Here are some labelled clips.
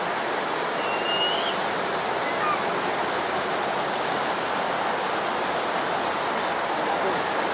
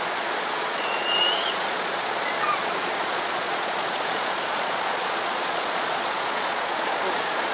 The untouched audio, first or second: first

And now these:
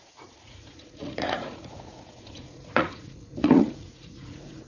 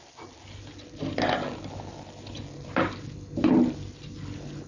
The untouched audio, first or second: second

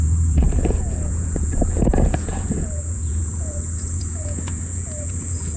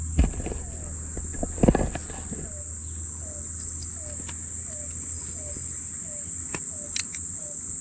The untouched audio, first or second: second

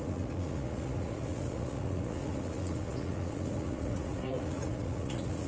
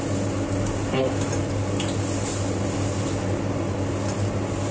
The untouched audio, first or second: second